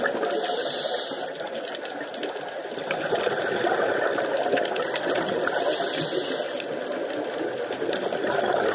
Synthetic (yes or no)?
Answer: no